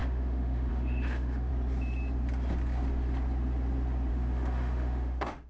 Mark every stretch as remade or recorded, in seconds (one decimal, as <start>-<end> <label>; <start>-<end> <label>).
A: 0.0-1.5 remade; 1.5-4.1 recorded; 4.1-5.5 remade